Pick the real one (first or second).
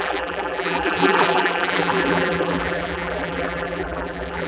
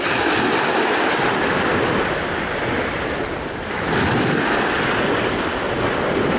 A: second